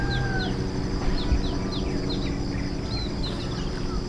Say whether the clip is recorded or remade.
recorded